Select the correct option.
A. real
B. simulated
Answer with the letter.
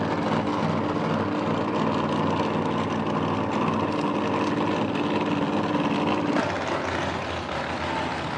A